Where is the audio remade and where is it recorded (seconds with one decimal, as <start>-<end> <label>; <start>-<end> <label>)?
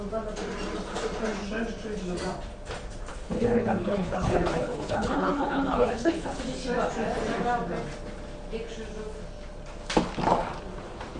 0.0-3.1 recorded; 3.1-6.4 remade; 6.4-11.2 recorded